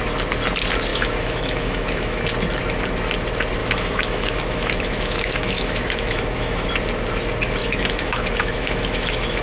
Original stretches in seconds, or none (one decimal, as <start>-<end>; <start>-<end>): 0.0-0.9; 2.2-3.6; 6.7-7.6